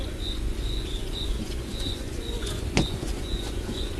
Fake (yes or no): yes